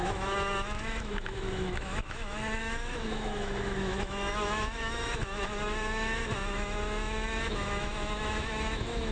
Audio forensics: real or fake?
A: fake